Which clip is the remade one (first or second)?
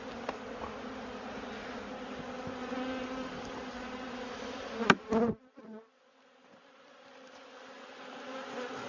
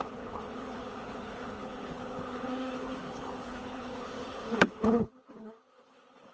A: second